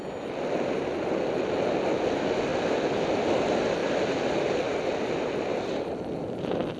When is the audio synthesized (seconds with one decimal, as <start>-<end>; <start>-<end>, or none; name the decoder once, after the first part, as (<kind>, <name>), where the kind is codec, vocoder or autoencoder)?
none